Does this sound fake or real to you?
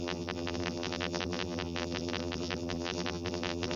fake